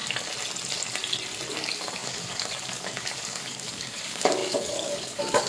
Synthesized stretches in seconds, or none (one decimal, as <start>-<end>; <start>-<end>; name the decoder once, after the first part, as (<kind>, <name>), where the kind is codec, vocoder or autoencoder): 1.5-5.5 (codec, DAC)